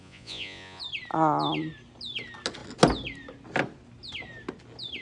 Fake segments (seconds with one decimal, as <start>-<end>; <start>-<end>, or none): 0.0-0.8